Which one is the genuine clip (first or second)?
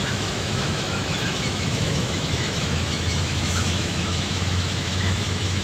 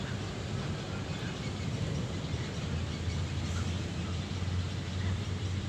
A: second